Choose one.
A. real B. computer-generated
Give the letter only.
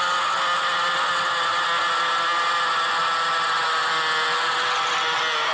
A